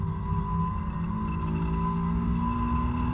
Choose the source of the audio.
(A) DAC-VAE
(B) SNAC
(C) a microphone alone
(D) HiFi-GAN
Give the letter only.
C